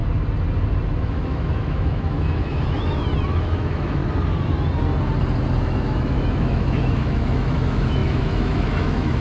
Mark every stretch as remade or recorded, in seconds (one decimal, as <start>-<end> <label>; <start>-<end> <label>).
0.0-1.0 recorded; 1.0-4.0 remade; 4.0-5.6 recorded; 5.6-9.2 remade